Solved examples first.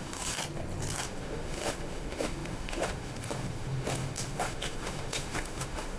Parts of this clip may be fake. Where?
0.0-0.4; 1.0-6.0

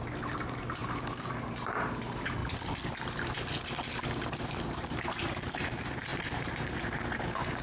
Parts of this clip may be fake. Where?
0.0-2.4; 4.0-7.6

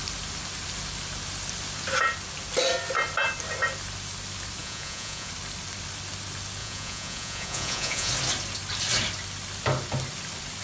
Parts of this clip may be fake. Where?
4.6-5.3; 6.6-8.1

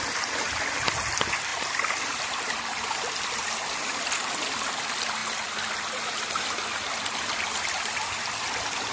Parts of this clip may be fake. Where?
0.0-8.9

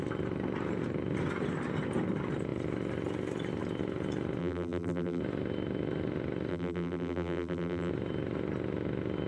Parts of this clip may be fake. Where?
4.4-5.2; 6.5-7.9

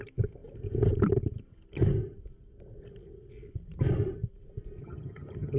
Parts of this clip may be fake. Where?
4.8-5.6

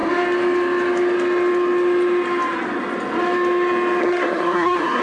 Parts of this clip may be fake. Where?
4.0-5.0

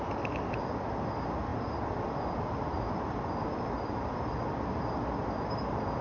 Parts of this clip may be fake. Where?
none